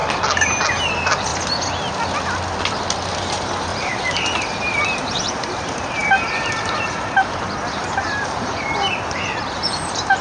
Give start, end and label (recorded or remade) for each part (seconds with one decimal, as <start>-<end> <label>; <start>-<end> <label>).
0.0-0.9 recorded; 0.9-1.3 remade; 1.3-3.2 recorded; 3.2-10.2 remade